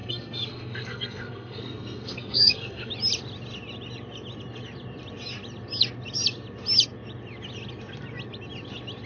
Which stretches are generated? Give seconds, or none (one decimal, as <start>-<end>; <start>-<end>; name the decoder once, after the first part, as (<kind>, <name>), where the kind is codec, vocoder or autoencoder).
0.0-2.9 (codec, SNAC)